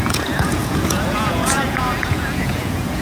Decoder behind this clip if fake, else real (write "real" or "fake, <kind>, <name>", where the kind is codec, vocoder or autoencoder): fake, vocoder, Vocos